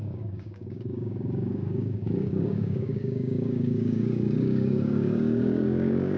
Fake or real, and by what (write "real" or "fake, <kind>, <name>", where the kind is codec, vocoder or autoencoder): fake, codec, DAC